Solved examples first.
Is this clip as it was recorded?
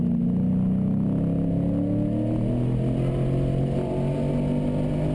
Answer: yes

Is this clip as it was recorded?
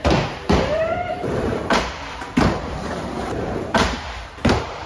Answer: no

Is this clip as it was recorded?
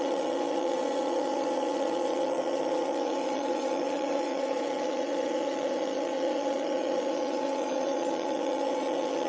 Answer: no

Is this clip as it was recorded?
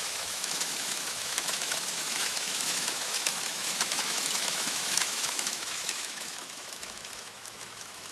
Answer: no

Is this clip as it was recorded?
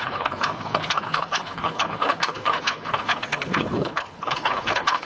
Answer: no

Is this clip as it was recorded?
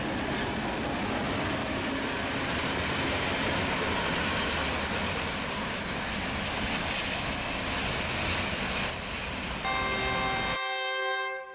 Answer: yes